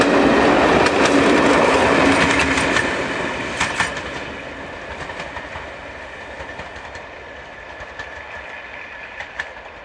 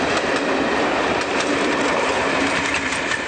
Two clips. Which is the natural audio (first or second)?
first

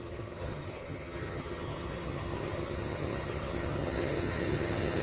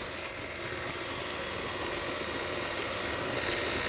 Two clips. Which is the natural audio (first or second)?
second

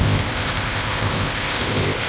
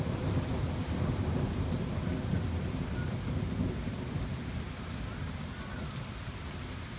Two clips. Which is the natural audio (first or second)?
second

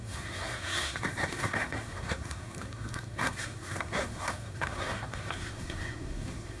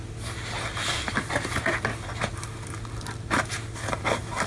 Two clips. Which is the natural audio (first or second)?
second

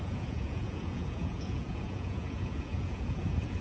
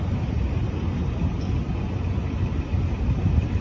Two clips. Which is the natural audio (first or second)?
second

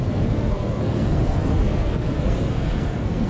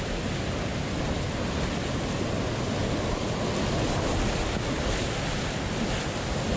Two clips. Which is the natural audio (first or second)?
second